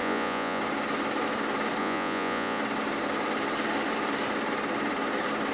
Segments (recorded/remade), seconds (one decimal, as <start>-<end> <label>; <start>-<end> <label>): 0.0-0.6 remade; 0.6-1.8 recorded; 1.8-2.6 remade; 2.6-5.5 recorded